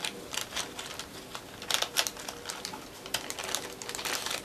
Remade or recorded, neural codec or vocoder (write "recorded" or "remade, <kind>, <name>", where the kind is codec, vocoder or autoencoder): recorded